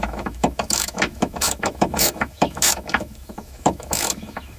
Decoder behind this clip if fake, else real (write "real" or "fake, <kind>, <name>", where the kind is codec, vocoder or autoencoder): fake, autoencoder, DAC-VAE